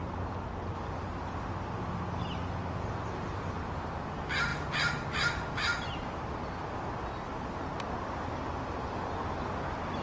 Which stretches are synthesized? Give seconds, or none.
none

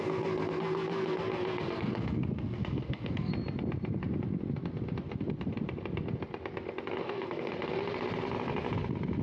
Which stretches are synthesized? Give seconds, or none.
0.0-3.3 (codec, SNAC); 7.0-7.5

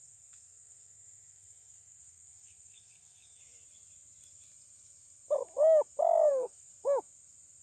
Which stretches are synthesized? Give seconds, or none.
0.0-3.4 (codec, SNAC); 6.3-6.7

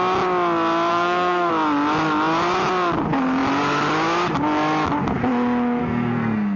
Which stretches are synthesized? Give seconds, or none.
0.9-1.5 (codec, SNAC); 5.8-6.6

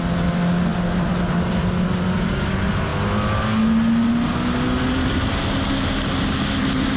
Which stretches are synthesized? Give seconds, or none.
none

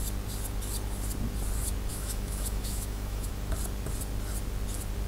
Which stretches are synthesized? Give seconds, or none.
1.9-3.3 (autoencoder, DAC-VAE)

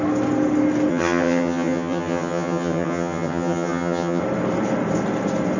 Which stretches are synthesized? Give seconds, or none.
0.9-4.2 (vocoder, HiFi-GAN)

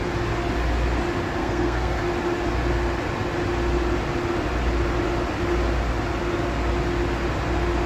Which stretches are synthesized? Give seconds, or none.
1.4-2.0 (codec, SNAC)